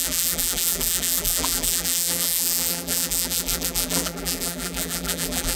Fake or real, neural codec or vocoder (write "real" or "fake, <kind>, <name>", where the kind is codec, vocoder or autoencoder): fake, vocoder, BigVGAN v2